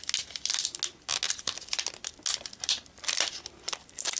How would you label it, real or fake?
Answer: real